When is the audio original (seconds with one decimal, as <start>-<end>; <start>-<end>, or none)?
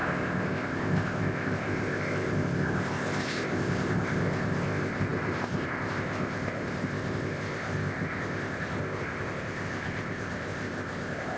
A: none